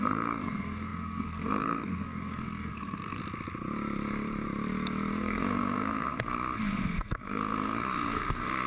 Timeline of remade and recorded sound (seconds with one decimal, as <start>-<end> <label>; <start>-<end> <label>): 0.0-3.2 remade; 3.2-5.2 recorded; 5.2-8.7 remade